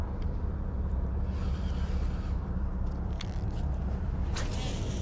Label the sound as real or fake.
real